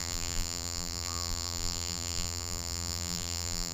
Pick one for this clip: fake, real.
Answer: fake